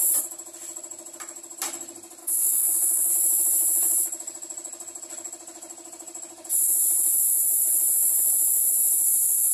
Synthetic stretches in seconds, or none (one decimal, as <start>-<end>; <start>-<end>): 2.2-3.1